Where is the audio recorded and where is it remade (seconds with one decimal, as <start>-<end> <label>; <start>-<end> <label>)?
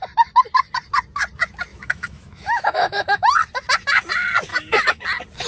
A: 0.0-1.7 recorded; 1.7-3.4 remade; 3.4-4.5 recorded; 4.5-5.0 remade; 5.0-5.5 recorded